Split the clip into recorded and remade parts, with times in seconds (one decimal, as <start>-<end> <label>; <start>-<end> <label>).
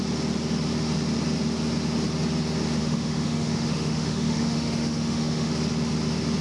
0.0-2.8 recorded; 2.8-5.5 remade; 5.5-6.4 recorded